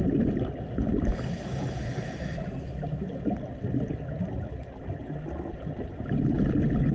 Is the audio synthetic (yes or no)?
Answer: no